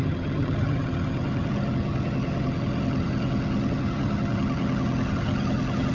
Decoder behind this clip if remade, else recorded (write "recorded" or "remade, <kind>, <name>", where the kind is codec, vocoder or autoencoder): remade, vocoder, HiFi-GAN